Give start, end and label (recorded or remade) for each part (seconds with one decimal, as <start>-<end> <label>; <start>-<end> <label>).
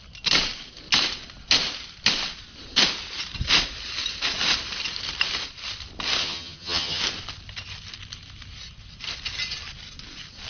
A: 0.0-6.2 recorded; 6.2-7.0 remade; 7.0-10.5 recorded